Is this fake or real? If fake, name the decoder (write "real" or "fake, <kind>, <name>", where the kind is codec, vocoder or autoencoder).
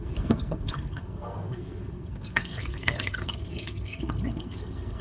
fake, codec, SNAC